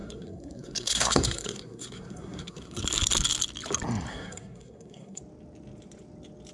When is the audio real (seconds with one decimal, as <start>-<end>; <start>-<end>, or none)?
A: 2.8-4.1; 5.2-6.5